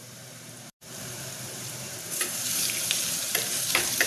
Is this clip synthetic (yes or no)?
yes